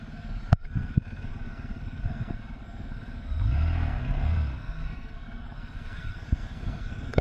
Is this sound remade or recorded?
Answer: remade